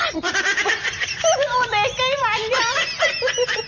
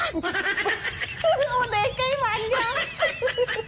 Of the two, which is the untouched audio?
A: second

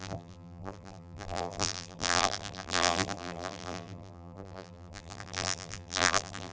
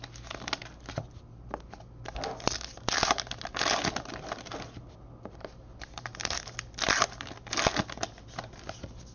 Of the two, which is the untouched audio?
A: second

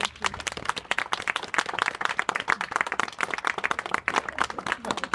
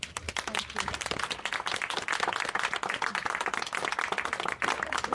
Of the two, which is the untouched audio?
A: second